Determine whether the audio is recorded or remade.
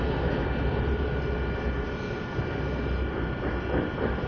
recorded